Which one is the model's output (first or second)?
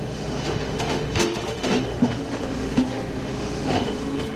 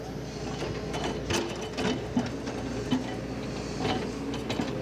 first